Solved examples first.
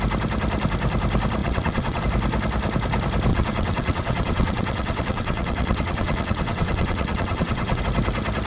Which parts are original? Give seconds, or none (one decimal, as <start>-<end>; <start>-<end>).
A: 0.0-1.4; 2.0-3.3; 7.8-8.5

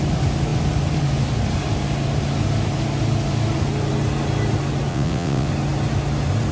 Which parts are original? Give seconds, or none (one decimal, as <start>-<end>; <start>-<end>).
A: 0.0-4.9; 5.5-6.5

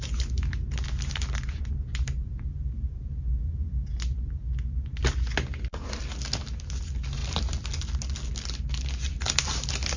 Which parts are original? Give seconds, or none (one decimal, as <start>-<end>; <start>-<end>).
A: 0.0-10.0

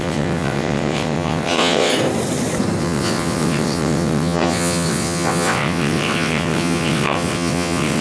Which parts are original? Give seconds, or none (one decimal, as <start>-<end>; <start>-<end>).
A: 1.9-2.8

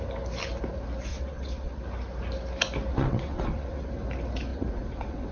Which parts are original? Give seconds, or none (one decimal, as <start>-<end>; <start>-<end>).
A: 0.0-1.1; 1.8-2.9; 3.9-4.5